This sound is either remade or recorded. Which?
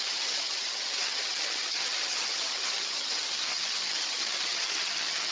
remade